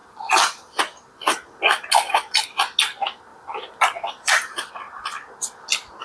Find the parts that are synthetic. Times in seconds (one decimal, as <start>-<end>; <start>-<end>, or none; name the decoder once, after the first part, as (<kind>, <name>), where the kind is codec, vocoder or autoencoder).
0.0-0.8 (vocoder, BigVGAN v2); 3.3-4.7